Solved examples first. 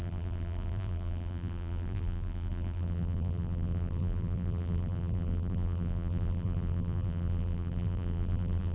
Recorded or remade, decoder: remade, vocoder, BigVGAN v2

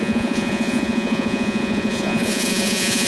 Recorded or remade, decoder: remade, vocoder, Vocos